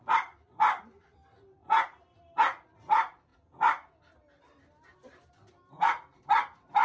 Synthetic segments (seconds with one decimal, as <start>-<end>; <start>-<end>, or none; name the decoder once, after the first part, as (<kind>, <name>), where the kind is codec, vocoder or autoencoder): 0.0-1.6 (vocoder, BigVGAN v2); 2.7-3.3; 5.3-6.8

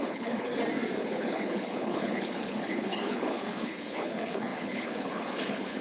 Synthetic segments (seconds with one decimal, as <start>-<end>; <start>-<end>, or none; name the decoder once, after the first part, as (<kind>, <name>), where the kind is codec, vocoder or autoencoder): 0.0-0.5 (codec, HILCodec); 1.0-5.8

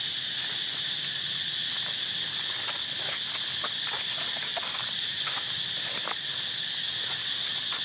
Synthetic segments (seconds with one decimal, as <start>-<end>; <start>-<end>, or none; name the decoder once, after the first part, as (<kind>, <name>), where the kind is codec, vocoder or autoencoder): none

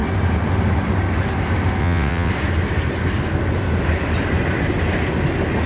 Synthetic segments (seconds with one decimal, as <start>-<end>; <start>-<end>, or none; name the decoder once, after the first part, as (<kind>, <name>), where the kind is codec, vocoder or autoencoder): 1.8-2.3 (vocoder, WaveNeXt)

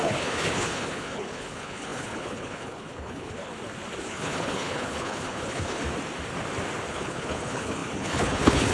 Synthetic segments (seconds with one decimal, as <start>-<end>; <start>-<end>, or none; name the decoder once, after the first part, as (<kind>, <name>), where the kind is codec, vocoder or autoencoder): 0.0-3.5 (codec, HILCodec); 4.0-5.8; 6.9-8.7

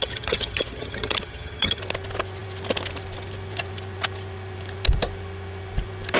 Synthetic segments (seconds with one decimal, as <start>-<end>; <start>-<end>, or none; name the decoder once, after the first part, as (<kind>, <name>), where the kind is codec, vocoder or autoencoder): 0.0-1.8 (vocoder, HiFi-GAN)